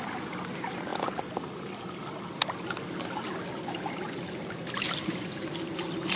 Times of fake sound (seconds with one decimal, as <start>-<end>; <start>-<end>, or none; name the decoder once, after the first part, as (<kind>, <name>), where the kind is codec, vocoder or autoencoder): none